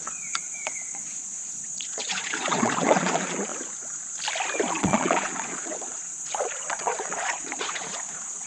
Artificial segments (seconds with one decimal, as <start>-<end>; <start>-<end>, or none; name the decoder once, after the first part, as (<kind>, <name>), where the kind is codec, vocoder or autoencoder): 0.0-3.5 (vocoder, Vocos); 4.7-8.5

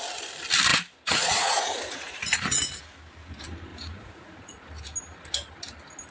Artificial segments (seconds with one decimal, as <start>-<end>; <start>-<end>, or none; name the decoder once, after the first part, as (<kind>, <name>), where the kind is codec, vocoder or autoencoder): 0.7-2.8 (vocoder, Vocos); 3.7-4.6

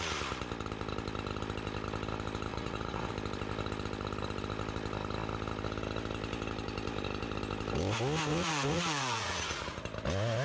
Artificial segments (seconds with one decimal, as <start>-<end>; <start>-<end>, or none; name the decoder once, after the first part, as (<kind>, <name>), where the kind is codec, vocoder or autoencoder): 2.5-3.1 (vocoder, Vocos); 8.3-9.8